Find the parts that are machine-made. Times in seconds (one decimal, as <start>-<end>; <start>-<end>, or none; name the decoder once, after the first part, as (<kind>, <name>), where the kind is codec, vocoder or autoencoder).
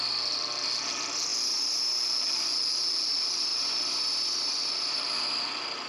0.0-1.3 (vocoder, BigVGAN v2); 2.0-3.5; 4.9-5.9